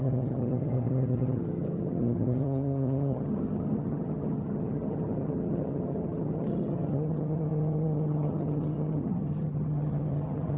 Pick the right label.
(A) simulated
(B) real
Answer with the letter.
A